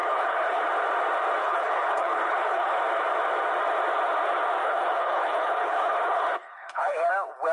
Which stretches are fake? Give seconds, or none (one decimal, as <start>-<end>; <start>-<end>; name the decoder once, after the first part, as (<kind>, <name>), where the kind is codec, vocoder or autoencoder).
0.0-0.6 (codec, HILCodec); 1.4-2.8; 4.6-7.1